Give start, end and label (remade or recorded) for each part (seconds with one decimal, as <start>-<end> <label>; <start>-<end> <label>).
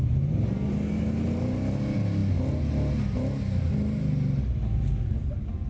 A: 0.0-5.7 recorded